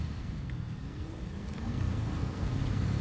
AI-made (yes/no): yes